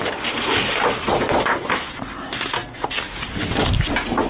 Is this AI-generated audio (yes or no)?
no